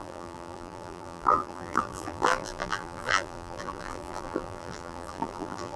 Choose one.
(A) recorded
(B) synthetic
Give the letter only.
B